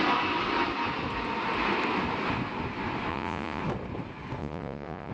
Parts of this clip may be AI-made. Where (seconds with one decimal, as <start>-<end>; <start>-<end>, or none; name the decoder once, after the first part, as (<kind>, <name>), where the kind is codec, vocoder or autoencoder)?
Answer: 3.1-3.6 (vocoder, Vocos); 4.4-5.1